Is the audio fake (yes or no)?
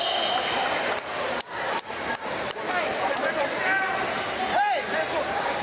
yes